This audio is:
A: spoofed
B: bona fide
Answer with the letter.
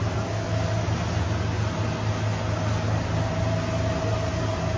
B